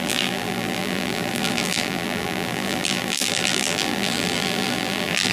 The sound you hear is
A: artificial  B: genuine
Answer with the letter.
A